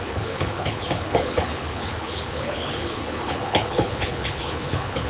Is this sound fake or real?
fake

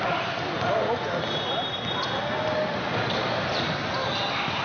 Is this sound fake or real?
real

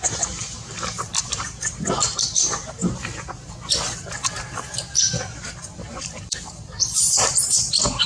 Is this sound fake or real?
fake